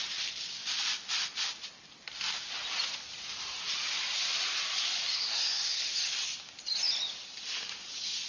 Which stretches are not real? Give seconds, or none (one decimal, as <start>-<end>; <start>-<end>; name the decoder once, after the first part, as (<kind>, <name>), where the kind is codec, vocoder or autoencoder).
5.1-5.9 (codec, SNAC)